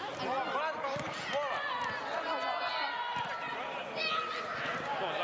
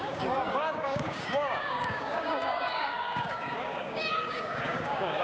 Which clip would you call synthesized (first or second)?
second